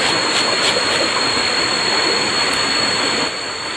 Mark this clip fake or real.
real